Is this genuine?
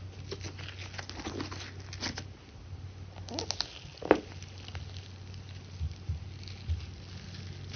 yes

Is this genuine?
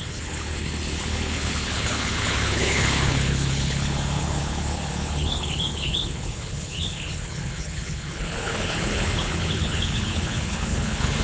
no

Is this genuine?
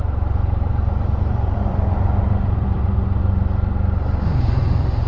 no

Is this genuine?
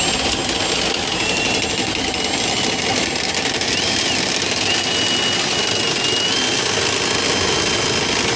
yes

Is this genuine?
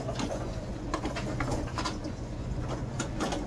no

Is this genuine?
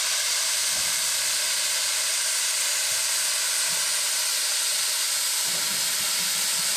no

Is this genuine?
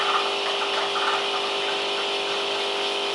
yes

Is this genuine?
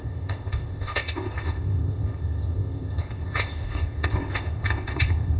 no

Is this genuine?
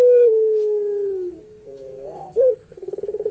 no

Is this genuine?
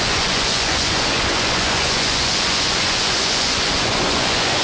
no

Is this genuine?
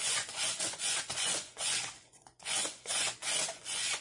no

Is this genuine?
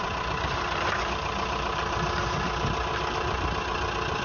yes